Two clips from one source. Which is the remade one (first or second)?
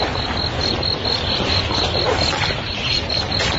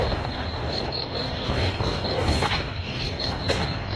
second